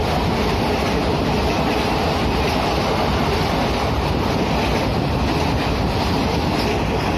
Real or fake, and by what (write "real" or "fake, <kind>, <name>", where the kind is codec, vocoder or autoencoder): real